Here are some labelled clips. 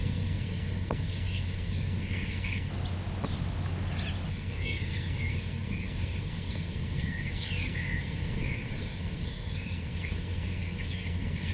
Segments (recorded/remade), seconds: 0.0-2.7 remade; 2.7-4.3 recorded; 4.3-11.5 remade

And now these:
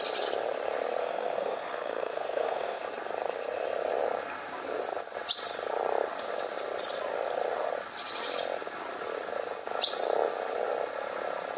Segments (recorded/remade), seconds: 0.0-1.0 recorded; 1.0-2.8 remade; 2.8-11.6 recorded

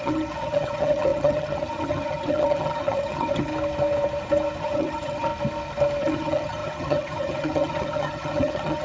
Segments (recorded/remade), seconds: 0.0-3.5 remade; 3.5-4.6 recorded; 4.6-5.3 remade; 5.3-6.0 recorded; 6.0-8.8 remade